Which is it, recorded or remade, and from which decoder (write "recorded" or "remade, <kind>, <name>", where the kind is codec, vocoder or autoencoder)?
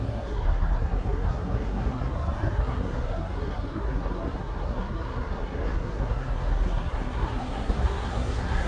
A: remade, codec, SNAC